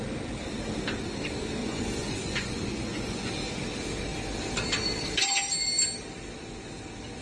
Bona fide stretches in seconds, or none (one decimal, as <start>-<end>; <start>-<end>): 0.0-1.6; 3.3-7.2